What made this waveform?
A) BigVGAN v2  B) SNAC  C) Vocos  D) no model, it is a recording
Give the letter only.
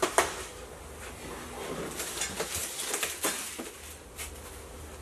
D